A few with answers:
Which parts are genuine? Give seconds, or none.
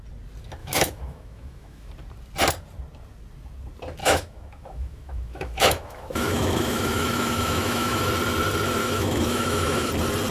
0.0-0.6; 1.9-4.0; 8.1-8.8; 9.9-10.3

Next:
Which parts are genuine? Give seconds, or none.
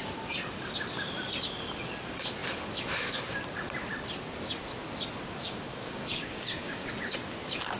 0.0-5.4; 6.9-7.8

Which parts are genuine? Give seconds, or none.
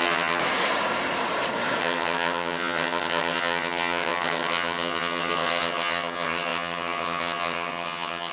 0.4-1.8